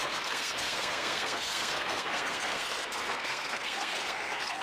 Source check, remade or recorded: remade